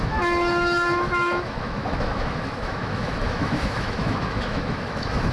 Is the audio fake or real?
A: fake